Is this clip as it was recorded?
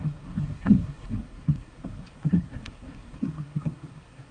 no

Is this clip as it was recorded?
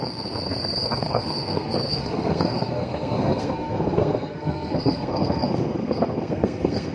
no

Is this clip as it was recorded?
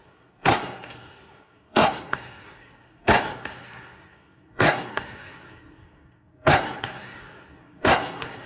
no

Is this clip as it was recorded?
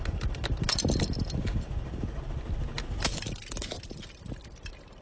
yes